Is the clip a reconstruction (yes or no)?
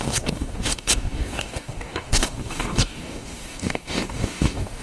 yes